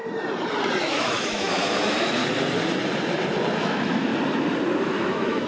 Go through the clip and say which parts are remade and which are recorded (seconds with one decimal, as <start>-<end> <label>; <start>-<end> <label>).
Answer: 0.0-0.8 recorded; 0.8-2.2 remade; 2.2-3.6 recorded; 3.6-4.1 remade; 4.1-4.8 recorded; 4.8-5.5 remade